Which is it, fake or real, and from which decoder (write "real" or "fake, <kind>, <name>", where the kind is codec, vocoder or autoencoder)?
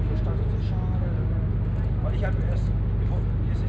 real